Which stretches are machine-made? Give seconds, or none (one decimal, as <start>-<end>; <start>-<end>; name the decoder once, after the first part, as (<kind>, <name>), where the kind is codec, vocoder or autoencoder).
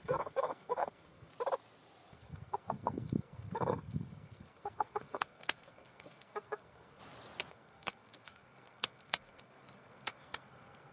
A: 0.0-1.3 (codec, SNAC); 2.1-7.0; 7.5-10.9